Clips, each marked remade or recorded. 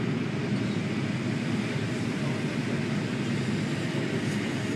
recorded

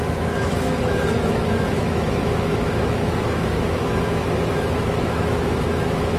remade